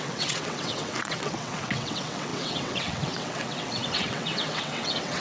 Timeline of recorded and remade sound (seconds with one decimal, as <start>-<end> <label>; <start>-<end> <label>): 0.0-5.2 remade